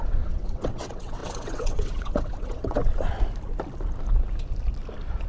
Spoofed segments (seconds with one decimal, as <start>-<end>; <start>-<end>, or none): 0.0-2.8